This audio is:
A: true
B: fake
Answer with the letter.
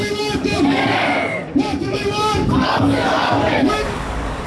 B